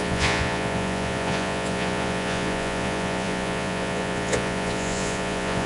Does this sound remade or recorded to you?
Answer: remade